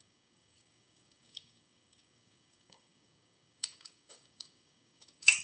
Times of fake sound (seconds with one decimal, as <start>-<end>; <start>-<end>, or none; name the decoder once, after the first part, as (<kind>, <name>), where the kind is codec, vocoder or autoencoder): 0.0-5.4 (codec, DAC)